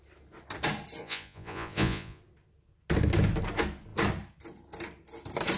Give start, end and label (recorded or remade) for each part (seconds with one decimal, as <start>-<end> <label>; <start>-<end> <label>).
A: 0.0-1.0 recorded; 1.0-2.2 remade; 2.2-5.6 recorded